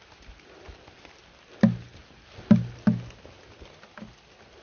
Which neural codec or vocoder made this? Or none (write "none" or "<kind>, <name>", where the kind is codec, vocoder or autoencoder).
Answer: none